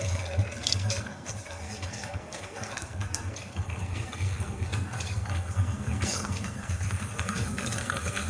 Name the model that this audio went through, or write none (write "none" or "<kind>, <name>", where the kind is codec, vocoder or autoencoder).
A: codec, SNAC